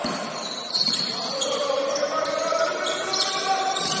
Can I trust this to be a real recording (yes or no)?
yes